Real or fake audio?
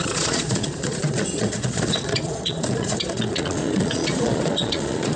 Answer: fake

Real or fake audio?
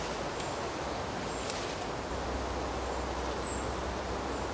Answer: real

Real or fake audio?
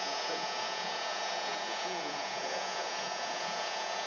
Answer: fake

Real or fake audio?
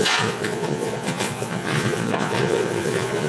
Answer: fake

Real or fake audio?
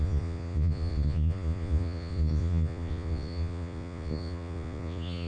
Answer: fake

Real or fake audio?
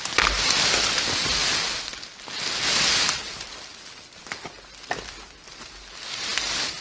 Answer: real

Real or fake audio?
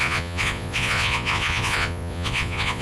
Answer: fake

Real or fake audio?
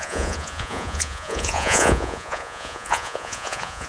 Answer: fake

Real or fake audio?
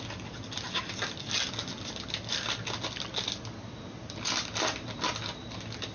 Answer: real